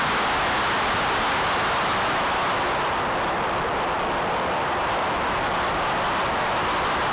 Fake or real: real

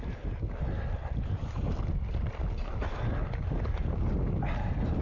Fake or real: real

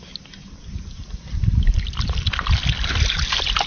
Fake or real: real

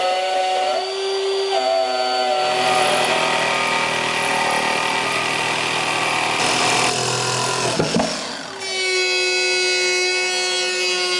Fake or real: real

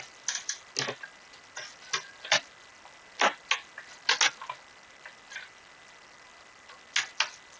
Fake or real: real